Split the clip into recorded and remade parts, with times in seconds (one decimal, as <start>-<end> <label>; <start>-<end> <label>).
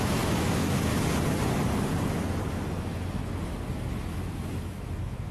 0.0-0.9 remade; 0.9-2.5 recorded; 2.5-3.2 remade; 3.2-4.0 recorded; 4.0-5.3 remade